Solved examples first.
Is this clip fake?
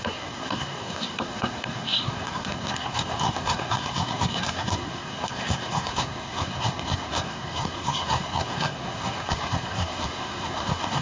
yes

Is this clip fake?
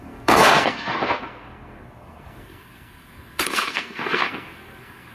yes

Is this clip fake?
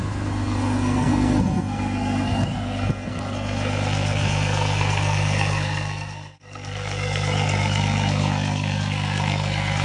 yes